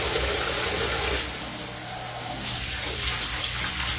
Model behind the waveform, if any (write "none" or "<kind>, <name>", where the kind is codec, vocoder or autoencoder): none